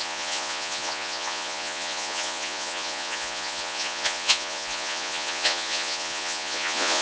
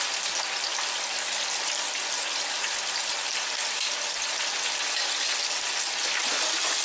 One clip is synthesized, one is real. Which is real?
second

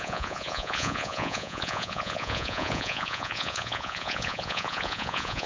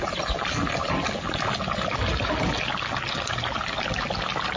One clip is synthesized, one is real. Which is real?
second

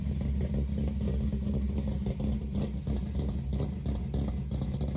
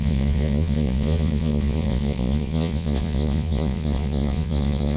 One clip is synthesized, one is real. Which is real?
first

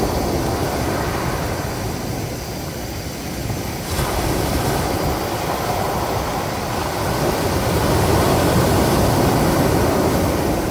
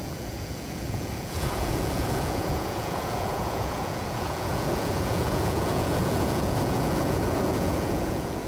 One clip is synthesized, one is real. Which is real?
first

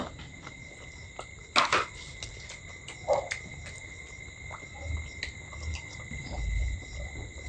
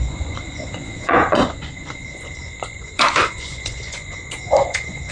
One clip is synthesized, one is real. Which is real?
first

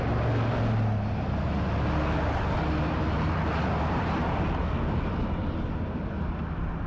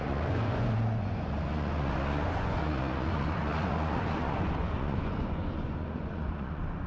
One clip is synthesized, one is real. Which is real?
first